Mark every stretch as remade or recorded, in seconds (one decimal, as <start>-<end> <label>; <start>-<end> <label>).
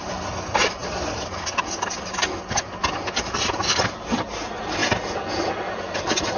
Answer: 0.0-6.4 recorded